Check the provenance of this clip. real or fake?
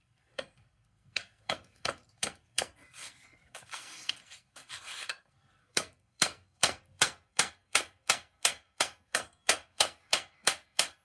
fake